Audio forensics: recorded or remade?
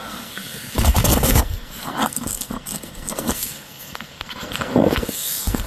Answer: remade